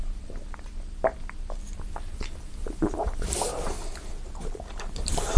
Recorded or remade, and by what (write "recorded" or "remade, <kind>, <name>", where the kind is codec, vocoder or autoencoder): recorded